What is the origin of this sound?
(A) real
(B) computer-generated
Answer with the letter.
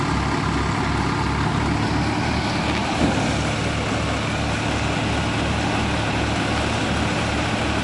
A